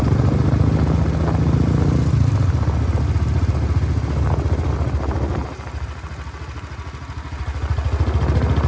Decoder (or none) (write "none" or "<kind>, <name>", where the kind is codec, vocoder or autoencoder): none